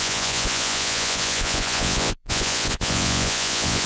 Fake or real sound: fake